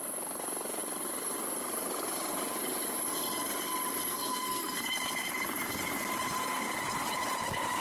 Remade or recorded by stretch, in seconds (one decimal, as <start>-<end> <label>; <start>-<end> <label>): 0.0-4.1 recorded; 4.1-4.8 remade; 4.8-7.8 recorded